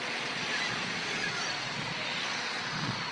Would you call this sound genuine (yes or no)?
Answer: no